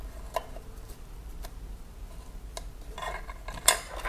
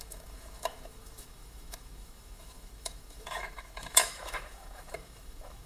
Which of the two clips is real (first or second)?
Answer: first